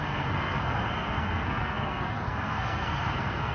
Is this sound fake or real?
fake